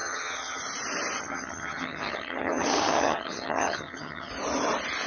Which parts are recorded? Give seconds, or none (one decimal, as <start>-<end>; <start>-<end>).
0.6-1.2; 4.3-5.1